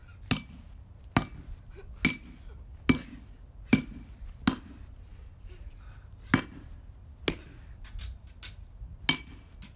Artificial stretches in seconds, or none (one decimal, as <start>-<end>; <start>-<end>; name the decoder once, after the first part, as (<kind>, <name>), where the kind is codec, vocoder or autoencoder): none